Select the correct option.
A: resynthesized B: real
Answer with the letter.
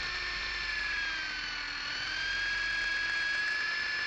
B